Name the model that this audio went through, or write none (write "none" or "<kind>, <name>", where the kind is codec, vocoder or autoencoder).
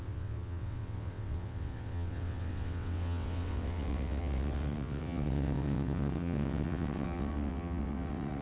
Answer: vocoder, WaveNeXt